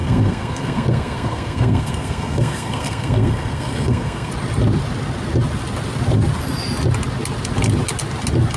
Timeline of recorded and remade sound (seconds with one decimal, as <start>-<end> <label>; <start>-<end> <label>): 0.0-4.3 remade; 4.3-8.6 recorded